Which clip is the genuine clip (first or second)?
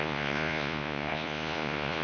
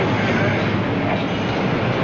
second